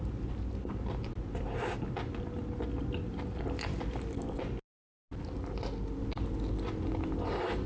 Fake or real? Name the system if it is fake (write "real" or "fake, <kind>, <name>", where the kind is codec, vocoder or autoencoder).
real